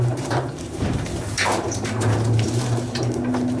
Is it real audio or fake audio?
fake